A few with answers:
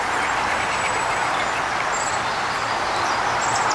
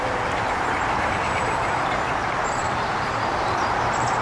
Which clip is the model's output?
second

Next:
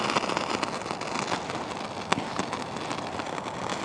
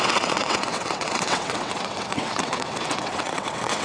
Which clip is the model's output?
second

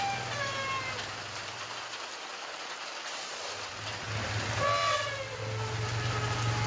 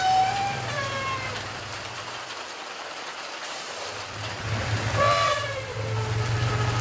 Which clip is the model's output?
second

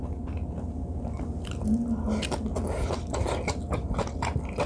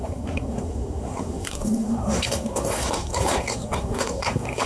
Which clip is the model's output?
second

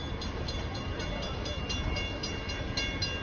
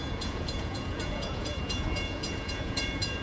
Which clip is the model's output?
second